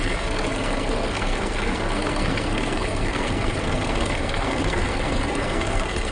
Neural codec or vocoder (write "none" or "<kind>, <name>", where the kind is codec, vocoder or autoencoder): codec, SNAC